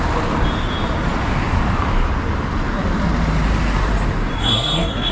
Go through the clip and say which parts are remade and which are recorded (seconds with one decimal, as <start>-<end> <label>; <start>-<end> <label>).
0.0-4.3 recorded; 4.3-5.1 remade